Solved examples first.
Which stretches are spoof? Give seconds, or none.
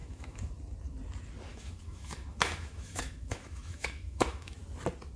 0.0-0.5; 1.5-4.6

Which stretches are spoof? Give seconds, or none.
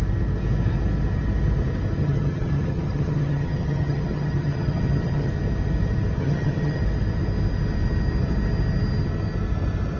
2.0-5.3; 6.2-6.8